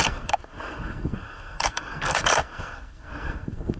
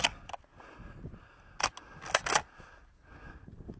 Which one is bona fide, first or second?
second